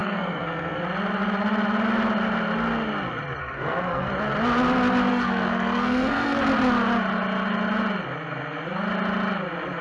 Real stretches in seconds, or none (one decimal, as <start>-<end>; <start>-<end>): 0.8-3.4; 4.1-5.1; 6.4-9.8

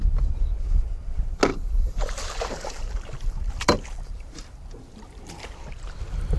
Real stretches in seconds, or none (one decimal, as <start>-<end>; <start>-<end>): 0.0-1.5; 5.3-6.4

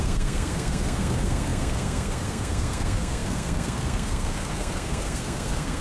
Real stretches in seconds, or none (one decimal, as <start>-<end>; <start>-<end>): none